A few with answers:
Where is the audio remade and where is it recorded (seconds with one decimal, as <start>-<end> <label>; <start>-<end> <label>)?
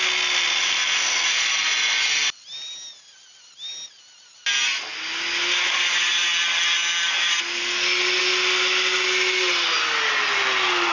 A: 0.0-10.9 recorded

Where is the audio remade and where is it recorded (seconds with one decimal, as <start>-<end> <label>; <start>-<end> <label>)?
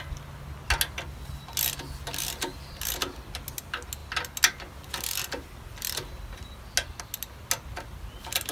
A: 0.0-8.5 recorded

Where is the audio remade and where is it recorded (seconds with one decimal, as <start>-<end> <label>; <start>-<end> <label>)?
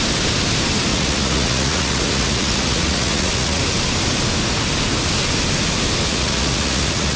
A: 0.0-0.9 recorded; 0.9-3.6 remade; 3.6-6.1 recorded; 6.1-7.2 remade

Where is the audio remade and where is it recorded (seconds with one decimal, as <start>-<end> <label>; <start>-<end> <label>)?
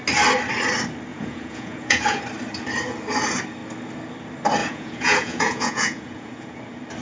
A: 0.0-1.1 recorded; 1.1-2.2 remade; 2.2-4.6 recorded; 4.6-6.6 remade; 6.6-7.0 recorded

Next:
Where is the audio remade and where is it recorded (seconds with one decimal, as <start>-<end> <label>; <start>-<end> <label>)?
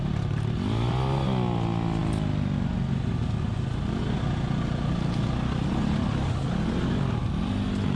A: 0.0-8.0 recorded